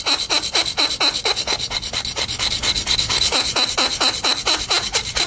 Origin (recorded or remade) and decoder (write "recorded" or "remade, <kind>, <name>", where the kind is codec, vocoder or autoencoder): recorded